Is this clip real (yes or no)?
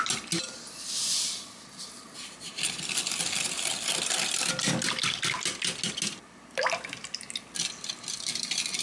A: yes